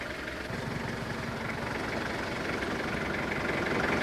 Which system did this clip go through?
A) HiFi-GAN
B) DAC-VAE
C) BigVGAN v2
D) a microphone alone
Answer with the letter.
D